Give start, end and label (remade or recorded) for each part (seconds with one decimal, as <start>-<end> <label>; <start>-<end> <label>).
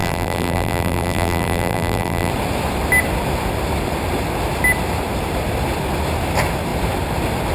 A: 0.0-2.3 remade; 2.3-7.5 recorded